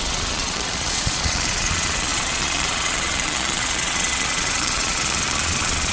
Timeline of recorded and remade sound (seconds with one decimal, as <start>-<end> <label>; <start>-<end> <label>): 0.0-5.9 remade